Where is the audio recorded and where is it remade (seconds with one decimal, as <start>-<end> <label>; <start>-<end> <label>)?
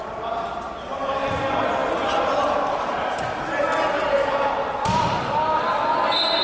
0.0-6.4 recorded